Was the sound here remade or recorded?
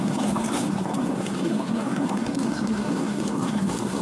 remade